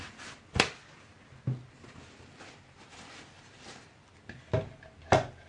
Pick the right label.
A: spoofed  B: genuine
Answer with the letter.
B